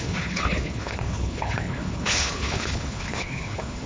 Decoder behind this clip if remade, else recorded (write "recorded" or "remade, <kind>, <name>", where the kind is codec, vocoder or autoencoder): remade, codec, HILCodec